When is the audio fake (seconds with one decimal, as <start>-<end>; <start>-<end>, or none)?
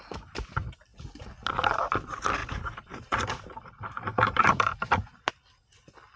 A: 2.4-5.3